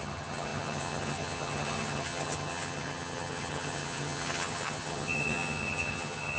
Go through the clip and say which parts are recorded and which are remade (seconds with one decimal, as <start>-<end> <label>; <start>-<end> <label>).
0.0-6.4 remade